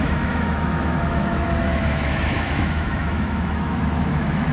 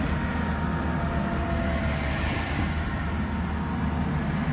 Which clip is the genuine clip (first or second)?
second